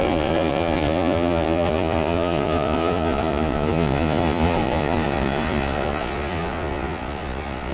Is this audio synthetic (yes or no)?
yes